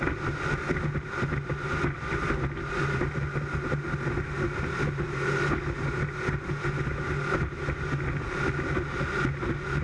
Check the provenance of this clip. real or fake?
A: real